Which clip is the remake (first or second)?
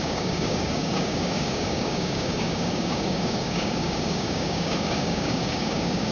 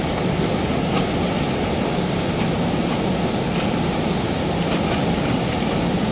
first